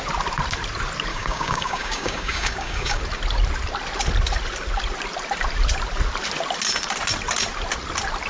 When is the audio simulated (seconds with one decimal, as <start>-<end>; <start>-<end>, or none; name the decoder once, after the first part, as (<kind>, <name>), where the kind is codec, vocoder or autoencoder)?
1.1-3.0 (codec, DAC)